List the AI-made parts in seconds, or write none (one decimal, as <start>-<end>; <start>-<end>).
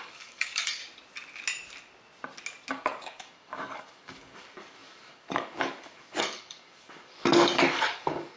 0.0-0.8; 2.7-8.4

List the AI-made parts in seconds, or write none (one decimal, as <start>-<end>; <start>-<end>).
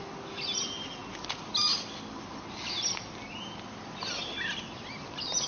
none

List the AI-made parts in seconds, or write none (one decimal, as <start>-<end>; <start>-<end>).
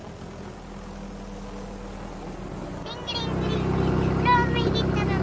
none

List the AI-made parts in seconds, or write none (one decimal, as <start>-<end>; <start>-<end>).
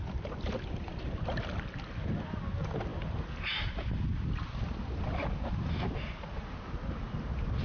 none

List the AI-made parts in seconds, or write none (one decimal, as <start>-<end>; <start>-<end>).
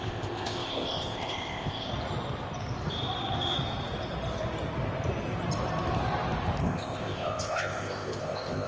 0.0-1.9; 6.6-8.7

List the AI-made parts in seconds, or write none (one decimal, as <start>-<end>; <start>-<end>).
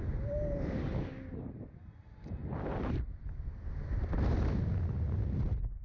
none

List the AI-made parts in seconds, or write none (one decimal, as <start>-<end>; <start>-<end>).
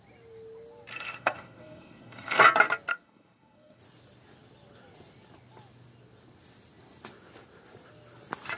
0.9-2.4; 2.9-3.8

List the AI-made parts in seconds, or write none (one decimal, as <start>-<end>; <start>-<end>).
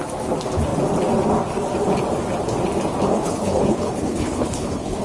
3.1-5.0